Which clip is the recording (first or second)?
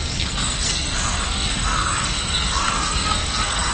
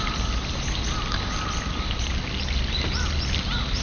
second